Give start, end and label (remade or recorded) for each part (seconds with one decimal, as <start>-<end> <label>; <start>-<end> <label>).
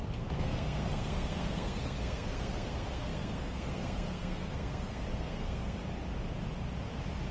0.0-5.8 remade; 5.8-7.3 recorded